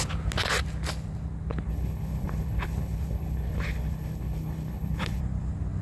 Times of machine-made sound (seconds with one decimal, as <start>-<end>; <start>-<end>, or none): 1.7-5.2